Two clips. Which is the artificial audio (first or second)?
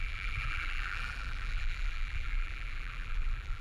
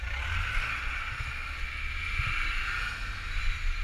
first